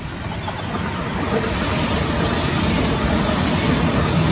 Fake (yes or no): no